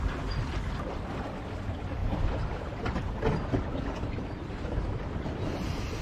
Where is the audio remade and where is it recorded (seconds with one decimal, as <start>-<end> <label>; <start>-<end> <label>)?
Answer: 0.0-6.0 recorded